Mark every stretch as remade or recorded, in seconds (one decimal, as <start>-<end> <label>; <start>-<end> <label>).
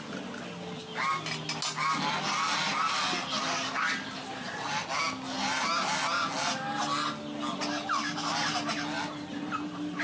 0.0-10.0 recorded